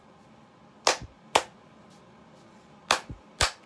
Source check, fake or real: real